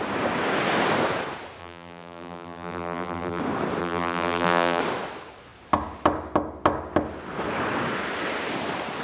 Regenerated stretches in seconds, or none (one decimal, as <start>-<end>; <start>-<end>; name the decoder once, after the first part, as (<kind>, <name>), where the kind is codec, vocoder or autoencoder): 1.6-3.4 (vocoder, BigVGAN v2); 3.8-4.8

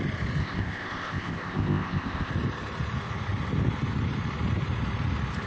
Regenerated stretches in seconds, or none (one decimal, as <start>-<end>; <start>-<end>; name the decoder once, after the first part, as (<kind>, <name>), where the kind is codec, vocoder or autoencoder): 0.4-2.3 (codec, ZipCodec)

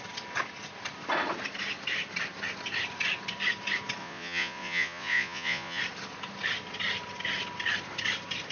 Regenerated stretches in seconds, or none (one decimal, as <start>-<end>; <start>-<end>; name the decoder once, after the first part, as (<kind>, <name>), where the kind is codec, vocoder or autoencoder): 4.0-5.8 (vocoder, Vocos)

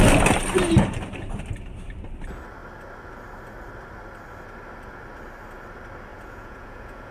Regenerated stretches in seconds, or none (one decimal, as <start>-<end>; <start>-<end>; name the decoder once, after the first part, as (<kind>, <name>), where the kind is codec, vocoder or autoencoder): 6.1-7.1 (vocoder, Vocos)

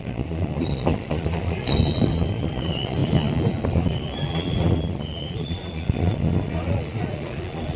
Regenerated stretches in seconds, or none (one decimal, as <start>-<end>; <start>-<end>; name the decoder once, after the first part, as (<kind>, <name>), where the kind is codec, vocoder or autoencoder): 0.0-7.8 (vocoder, Vocos)

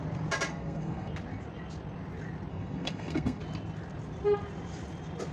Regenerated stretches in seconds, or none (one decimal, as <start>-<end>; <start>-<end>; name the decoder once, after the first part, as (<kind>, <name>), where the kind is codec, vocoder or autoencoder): 0.5-1.1 (codec, SNAC); 2.5-3.4